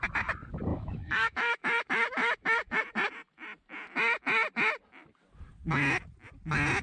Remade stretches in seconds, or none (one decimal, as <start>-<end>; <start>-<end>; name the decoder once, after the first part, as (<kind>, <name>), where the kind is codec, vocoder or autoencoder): 0.7-2.8 (autoencoder, DAC-VAE)